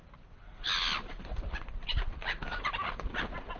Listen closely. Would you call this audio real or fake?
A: fake